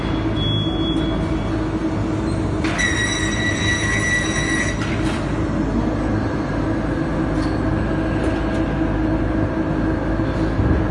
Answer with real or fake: real